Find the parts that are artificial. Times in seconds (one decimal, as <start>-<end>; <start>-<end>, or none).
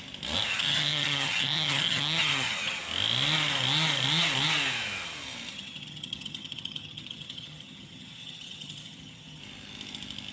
0.5-2.8; 5.5-9.4